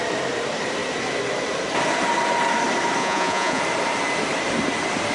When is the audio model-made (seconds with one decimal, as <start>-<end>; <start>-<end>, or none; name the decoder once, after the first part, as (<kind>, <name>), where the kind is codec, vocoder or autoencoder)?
3.0-3.6 (vocoder, Vocos)